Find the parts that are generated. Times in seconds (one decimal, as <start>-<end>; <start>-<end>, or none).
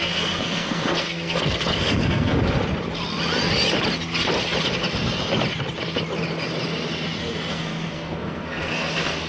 0.0-2.4; 7.5-9.3